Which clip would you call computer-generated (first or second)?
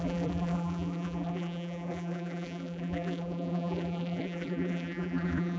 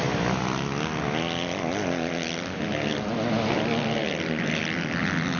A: first